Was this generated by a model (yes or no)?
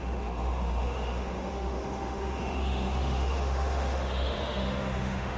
yes